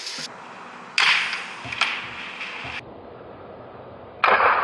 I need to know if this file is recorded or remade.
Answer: recorded